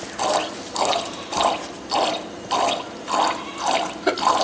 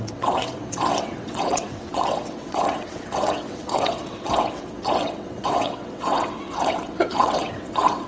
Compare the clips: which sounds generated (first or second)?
second